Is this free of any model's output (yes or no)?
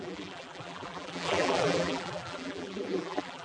no